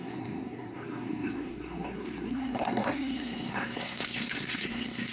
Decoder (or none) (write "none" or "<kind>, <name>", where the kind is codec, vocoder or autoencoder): codec, SNAC